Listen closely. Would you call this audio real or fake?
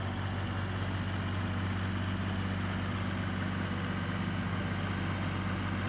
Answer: real